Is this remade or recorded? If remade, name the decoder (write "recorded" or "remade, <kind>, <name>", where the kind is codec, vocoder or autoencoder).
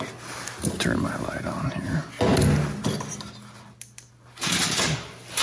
recorded